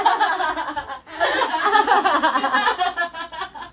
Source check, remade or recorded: recorded